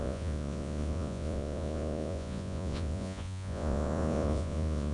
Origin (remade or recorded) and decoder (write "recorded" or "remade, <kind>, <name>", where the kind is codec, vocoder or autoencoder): remade, vocoder, Vocos